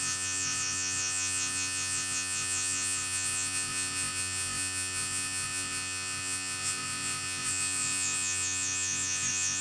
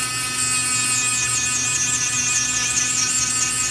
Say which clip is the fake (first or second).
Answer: first